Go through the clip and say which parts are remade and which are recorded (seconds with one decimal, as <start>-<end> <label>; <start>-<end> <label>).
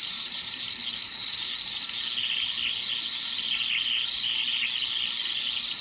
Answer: 0.0-0.7 remade; 0.7-5.8 recorded